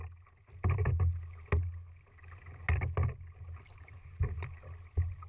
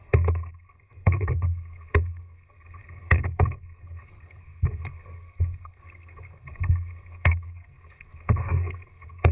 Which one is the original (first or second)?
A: first